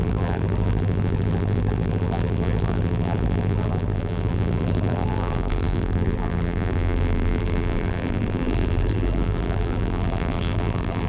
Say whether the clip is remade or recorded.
remade